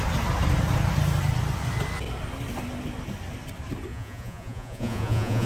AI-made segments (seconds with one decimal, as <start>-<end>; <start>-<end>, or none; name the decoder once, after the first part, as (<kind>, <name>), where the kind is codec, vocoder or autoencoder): 3.9-5.5 (vocoder, Vocos)